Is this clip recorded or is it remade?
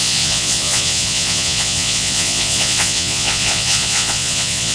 remade